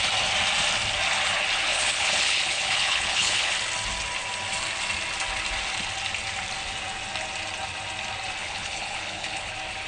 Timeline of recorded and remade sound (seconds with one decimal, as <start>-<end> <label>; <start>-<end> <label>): 0.0-1.7 recorded; 1.7-3.5 remade; 3.5-8.4 recorded; 8.4-9.5 remade; 9.5-9.9 recorded